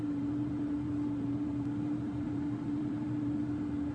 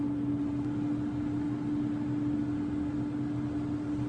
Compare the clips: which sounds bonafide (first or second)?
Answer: second